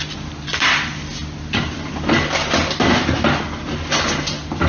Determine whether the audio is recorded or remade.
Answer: recorded